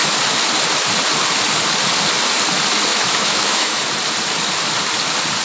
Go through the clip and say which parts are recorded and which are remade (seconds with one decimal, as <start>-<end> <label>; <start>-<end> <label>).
0.0-2.9 recorded; 2.9-3.8 remade; 3.8-5.4 recorded